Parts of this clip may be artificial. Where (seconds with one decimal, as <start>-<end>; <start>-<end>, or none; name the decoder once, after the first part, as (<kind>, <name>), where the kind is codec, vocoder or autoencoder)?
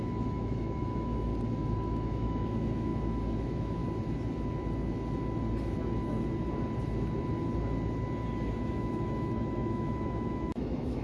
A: 0.0-1.3 (autoencoder, DAC-VAE); 1.9-2.9; 3.4-3.8; 8.5-11.0